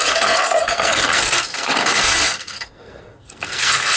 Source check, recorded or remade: remade